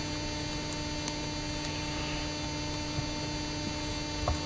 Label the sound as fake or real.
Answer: real